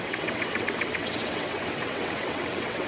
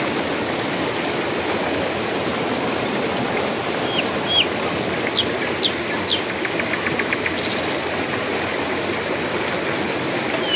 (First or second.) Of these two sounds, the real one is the second